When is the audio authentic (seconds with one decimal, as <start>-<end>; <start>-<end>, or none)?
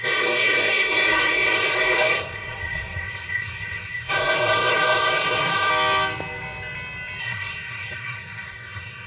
5.7-7.2